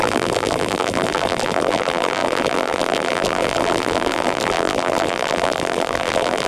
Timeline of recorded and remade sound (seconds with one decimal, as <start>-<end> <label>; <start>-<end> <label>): 0.0-6.5 remade